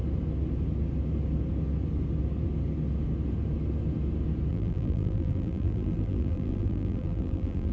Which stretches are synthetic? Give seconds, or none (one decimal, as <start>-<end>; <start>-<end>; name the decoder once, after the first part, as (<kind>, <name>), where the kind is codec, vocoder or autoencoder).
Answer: 4.5-7.7 (vocoder, BigVGAN v2)